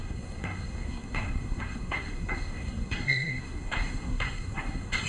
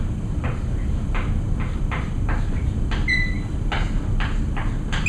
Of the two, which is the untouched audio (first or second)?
second